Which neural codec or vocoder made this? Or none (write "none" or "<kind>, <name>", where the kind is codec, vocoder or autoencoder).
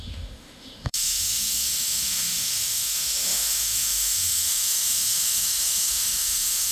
autoencoder, DAC-VAE